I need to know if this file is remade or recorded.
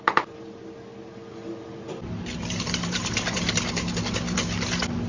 recorded